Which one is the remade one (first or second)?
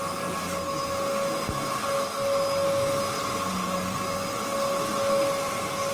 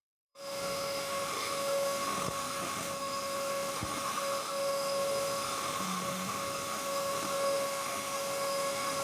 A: second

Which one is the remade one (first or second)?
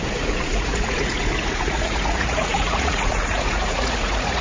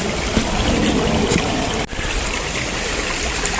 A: first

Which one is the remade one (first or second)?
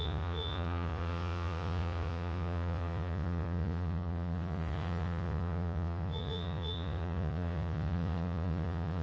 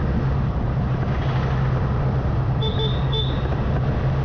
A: first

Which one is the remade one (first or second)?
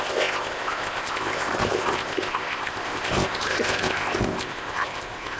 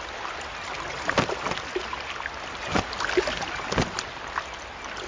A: first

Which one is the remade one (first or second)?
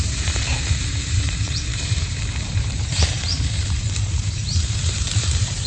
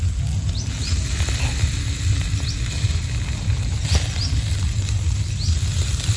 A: first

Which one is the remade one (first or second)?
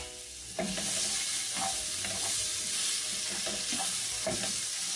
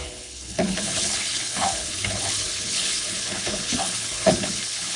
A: second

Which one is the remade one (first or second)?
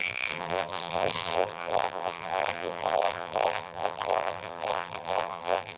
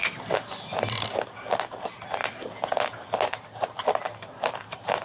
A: first